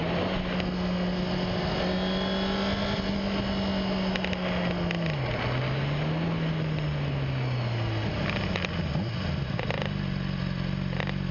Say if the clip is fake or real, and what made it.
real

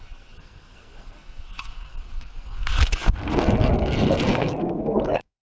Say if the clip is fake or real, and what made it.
fake, codec, SNAC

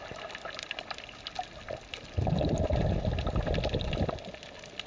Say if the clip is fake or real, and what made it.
real